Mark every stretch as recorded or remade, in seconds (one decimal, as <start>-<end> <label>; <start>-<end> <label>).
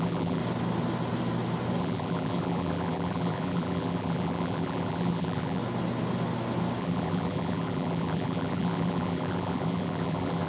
0.0-0.4 remade; 0.4-1.8 recorded; 1.8-5.6 remade; 5.6-6.8 recorded; 6.8-10.5 remade